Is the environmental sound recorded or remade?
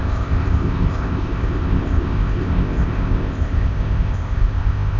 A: remade